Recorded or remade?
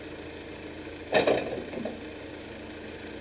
recorded